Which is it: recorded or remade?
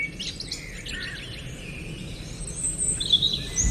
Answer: recorded